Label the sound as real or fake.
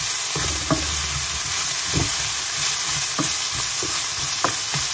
real